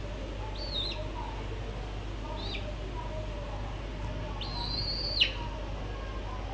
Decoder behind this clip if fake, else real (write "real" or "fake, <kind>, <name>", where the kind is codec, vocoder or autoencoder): real